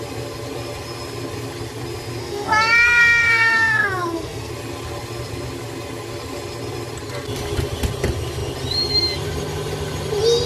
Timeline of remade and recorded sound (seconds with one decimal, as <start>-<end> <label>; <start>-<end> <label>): 0.0-2.2 recorded; 2.2-4.5 remade; 4.5-10.5 recorded